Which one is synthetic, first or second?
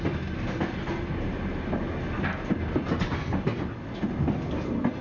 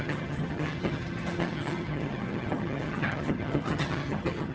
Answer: second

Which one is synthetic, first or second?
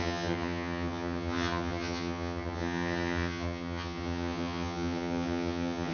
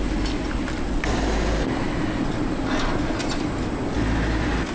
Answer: first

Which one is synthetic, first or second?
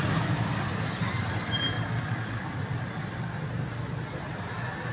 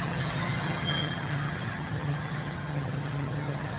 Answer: second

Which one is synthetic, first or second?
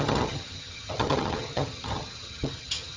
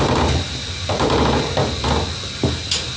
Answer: first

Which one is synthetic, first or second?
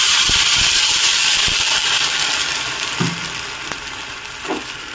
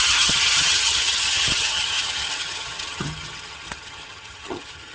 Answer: second